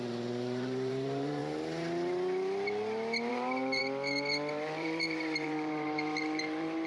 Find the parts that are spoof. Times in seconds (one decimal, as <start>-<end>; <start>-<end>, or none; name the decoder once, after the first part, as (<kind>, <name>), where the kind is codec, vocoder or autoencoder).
0.0-1.4 (vocoder, BigVGAN v2); 3.3-3.8; 4.5-6.9